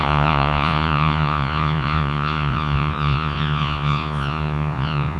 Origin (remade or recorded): remade